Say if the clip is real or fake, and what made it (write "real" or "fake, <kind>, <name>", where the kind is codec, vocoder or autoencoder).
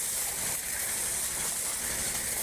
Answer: real